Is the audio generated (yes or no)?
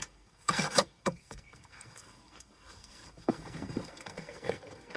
yes